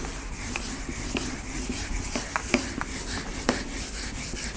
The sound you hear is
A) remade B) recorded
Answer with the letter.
B